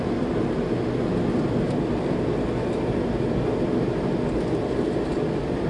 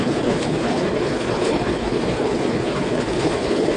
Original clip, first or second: first